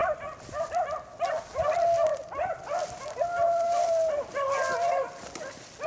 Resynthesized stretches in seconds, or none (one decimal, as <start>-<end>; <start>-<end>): none